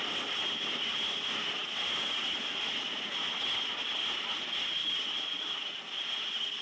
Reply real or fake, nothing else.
real